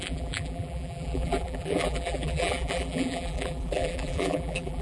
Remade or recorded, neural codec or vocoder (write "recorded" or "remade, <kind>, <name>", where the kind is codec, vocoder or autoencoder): remade, vocoder, BigVGAN v2